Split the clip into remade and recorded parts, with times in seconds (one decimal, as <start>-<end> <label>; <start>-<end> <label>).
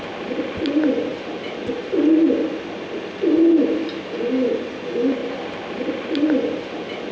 0.0-7.1 recorded